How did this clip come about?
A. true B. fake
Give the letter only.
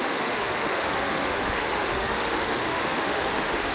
B